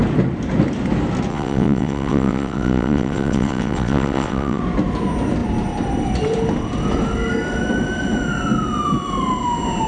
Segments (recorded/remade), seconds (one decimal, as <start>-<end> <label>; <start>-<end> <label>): 0.0-1.3 recorded; 1.3-4.6 remade; 4.6-9.9 recorded